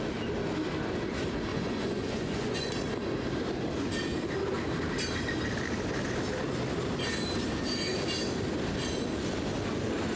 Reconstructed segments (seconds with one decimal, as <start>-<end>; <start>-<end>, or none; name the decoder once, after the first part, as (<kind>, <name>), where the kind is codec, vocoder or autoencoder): 1.5-2.7 (vocoder, Vocos)